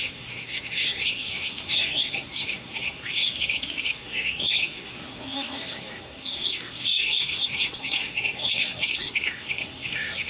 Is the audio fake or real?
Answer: fake